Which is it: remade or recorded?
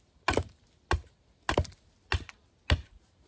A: recorded